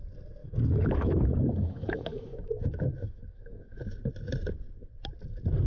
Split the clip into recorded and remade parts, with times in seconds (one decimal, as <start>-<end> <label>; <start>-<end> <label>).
0.0-0.4 recorded; 0.4-3.8 remade; 3.8-5.7 recorded